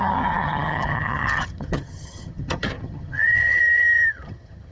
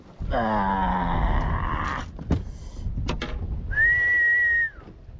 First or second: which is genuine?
second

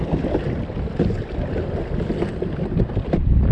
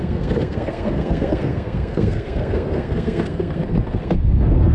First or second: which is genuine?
first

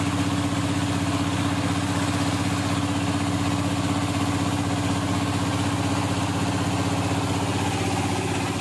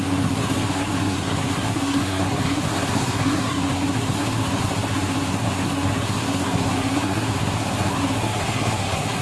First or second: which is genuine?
first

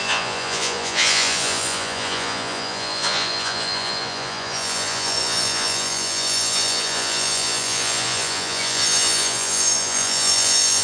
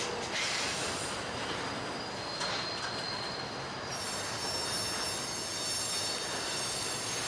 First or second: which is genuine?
second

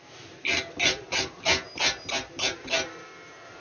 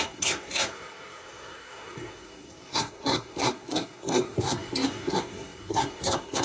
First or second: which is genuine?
first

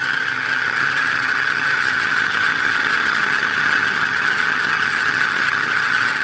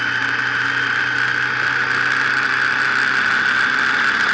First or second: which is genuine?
second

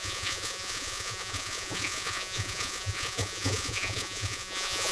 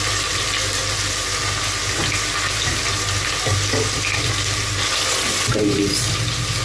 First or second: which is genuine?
second